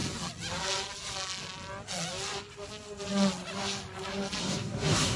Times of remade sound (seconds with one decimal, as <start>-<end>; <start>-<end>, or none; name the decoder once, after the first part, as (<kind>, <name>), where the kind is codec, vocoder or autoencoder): 4.4-5.2 (codec, SNAC)